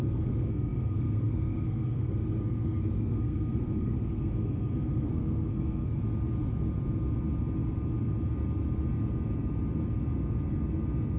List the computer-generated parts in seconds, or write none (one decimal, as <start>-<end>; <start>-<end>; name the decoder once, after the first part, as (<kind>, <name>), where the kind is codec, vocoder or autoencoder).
0.0-6.0 (codec, SNAC)